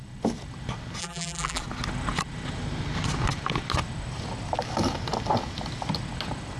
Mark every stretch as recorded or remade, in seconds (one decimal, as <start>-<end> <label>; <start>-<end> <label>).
0.0-1.0 recorded; 1.0-1.6 remade; 1.6-6.6 recorded